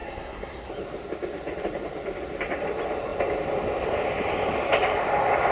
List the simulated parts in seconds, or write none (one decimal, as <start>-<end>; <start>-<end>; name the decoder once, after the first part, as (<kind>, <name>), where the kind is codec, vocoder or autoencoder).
0.0-0.7 (codec, SNAC)